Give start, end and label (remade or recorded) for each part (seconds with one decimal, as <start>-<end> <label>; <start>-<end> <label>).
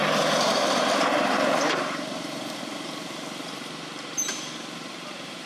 0.0-0.9 recorded; 0.9-5.5 remade